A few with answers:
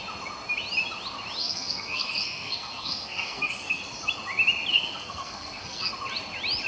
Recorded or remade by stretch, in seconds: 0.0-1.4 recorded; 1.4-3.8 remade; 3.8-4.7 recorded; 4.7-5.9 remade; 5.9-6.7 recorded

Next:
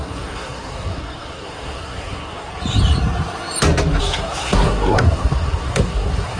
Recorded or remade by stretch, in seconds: 0.0-2.5 remade; 2.5-4.0 recorded; 4.0-6.4 remade

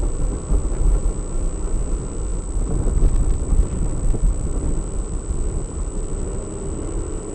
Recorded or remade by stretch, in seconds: 0.0-7.3 recorded

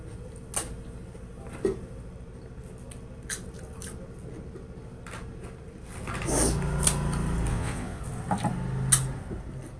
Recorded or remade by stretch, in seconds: 0.0-7.5 recorded; 7.5-8.0 remade; 8.0-9.8 recorded

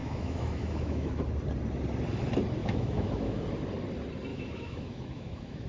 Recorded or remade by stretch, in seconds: 0.0-1.2 remade; 1.2-2.6 recorded; 2.6-3.4 remade; 3.4-4.3 recorded; 4.3-5.7 remade

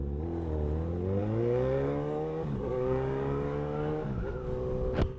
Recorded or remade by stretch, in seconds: 0.0-1.2 recorded; 1.2-4.3 remade; 4.3-5.2 recorded